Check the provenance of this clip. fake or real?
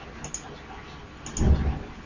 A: real